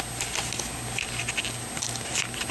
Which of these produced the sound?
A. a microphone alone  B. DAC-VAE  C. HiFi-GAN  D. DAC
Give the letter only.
A